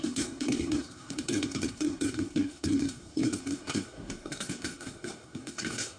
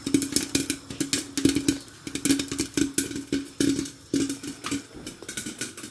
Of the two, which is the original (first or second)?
second